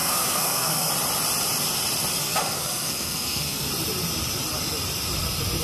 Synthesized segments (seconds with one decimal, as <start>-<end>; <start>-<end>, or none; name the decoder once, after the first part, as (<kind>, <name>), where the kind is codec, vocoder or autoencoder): 0.0-0.9 (codec, SNAC); 2.2-3.7